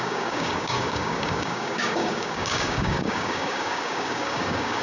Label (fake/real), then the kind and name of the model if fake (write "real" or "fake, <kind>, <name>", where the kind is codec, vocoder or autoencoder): fake, codec, DAC